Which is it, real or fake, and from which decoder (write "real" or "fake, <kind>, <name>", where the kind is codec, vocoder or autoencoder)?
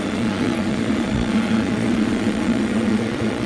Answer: fake, vocoder, Vocos